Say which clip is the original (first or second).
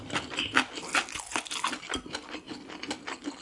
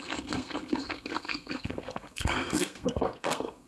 first